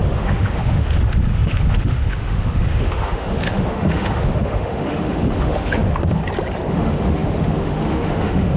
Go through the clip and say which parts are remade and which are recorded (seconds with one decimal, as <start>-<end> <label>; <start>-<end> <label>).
0.0-6.2 remade; 6.2-6.7 recorded; 6.7-8.6 remade